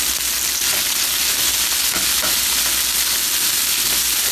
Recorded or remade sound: recorded